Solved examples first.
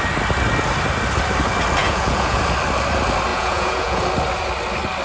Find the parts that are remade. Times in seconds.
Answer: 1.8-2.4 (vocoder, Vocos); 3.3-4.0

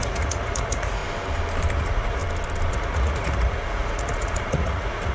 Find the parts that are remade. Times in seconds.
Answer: 0.0-1.0 (vocoder, Vocos); 1.8-2.2; 2.7-5.1

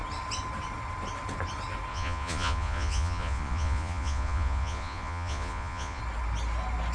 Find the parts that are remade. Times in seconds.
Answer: 1.9-6.0 (vocoder, Vocos)

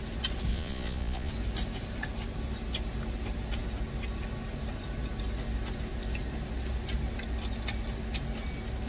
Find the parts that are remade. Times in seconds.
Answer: 0.5-1.3 (vocoder, Vocos)

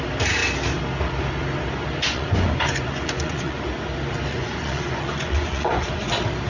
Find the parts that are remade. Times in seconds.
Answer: 2.0-3.6 (vocoder, Vocos); 4.3-6.1